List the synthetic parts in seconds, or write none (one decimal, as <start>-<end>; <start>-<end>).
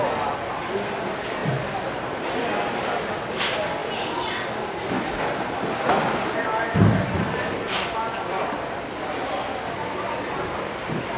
none